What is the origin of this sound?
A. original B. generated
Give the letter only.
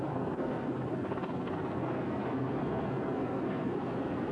B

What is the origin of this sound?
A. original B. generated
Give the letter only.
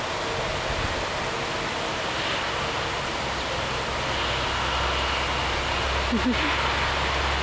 A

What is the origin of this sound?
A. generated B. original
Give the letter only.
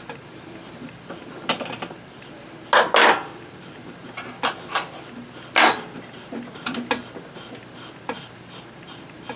B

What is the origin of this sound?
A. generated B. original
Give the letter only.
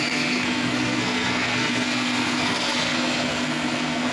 A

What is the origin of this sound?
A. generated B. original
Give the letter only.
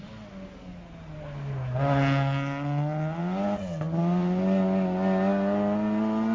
B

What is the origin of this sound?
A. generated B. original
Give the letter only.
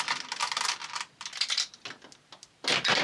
A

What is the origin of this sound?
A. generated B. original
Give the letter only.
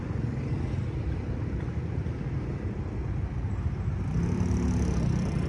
B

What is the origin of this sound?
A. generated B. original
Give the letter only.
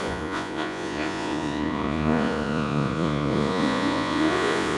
A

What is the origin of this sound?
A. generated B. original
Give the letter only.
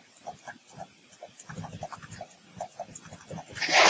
A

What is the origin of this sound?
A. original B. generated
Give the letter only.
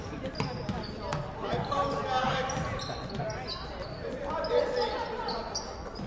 A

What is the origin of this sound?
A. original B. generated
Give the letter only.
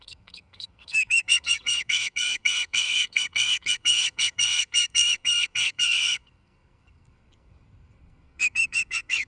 B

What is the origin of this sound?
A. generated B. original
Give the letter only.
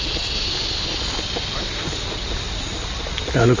B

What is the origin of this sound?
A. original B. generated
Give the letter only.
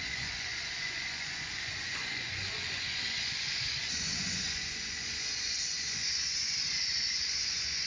B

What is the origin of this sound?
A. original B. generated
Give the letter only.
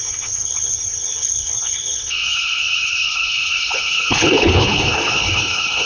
B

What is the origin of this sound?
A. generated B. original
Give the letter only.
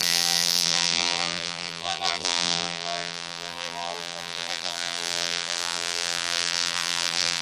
A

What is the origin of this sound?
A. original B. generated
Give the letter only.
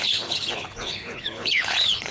B